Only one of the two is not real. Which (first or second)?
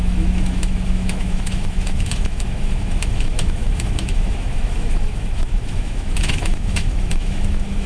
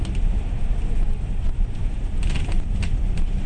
first